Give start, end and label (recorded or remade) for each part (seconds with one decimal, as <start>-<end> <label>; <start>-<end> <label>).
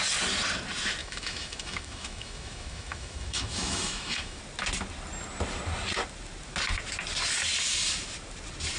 0.0-1.0 recorded; 1.0-4.4 remade; 4.4-8.8 recorded